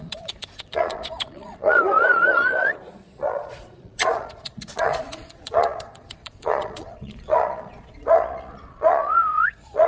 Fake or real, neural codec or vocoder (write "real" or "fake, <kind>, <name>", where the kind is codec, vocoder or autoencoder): fake, vocoder, Vocos